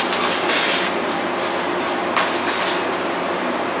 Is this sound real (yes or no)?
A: yes